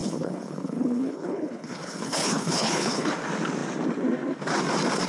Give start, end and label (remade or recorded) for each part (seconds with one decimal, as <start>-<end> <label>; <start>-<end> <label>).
0.0-3.1 remade; 3.1-5.1 recorded